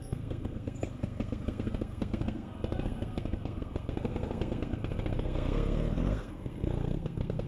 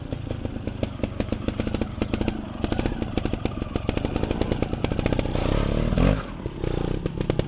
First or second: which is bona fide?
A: second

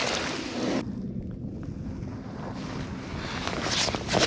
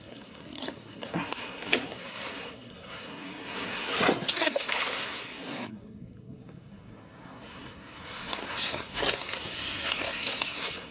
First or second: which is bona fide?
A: first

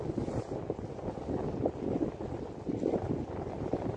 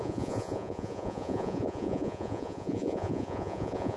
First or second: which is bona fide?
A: first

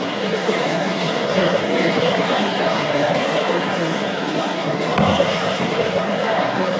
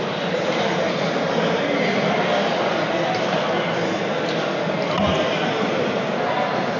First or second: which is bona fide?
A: second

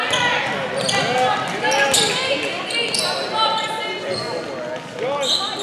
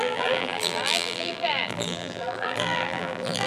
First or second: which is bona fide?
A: first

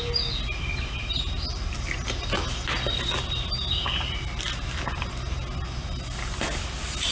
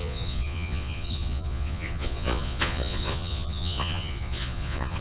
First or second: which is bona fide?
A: first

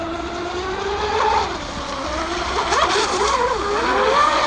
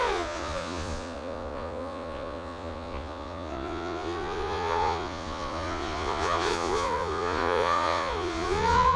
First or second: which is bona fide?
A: first